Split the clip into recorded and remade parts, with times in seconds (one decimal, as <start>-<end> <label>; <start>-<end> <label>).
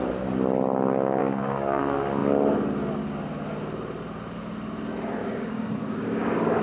0.0-1.2 recorded; 1.2-1.8 remade; 1.8-5.2 recorded; 5.2-6.6 remade